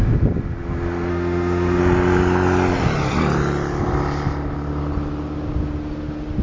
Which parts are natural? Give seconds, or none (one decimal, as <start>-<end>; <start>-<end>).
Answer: 0.0-1.1; 1.8-6.4